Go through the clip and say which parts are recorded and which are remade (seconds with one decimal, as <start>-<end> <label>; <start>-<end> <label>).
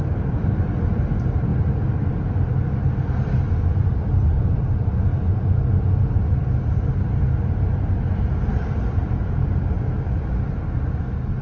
0.0-11.4 recorded